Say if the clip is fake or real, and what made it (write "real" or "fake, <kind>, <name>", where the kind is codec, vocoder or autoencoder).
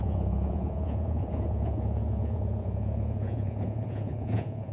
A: fake, vocoder, Vocos